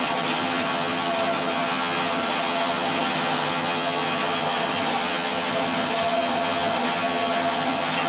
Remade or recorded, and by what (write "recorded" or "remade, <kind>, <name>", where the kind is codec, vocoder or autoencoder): remade, vocoder, HiFi-GAN